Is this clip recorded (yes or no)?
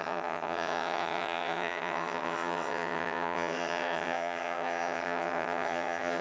no